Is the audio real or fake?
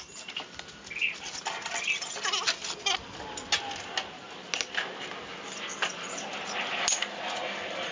real